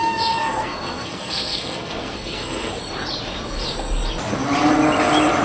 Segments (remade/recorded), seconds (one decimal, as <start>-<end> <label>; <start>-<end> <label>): 0.0-2.8 remade; 2.8-5.4 recorded